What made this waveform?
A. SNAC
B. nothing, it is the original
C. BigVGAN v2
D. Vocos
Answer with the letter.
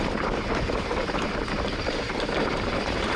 C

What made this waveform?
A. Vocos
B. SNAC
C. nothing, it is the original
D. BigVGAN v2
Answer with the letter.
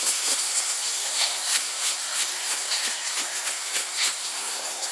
B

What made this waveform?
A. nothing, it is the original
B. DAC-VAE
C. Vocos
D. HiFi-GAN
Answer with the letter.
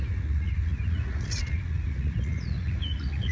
C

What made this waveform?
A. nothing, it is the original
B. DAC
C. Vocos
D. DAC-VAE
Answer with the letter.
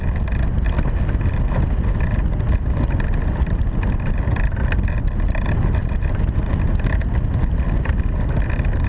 A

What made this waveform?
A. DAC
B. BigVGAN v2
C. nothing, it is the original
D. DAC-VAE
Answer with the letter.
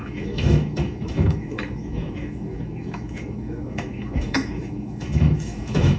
D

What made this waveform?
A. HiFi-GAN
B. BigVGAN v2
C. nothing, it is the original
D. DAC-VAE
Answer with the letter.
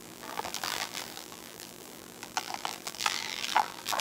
B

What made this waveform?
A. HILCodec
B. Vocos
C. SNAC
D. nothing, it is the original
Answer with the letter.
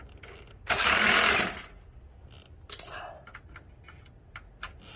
D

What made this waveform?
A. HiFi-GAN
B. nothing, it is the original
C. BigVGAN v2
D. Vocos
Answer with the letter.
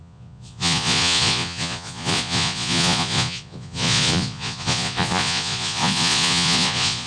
D